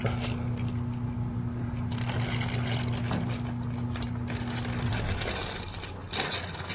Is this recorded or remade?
recorded